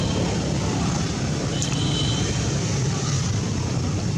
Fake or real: fake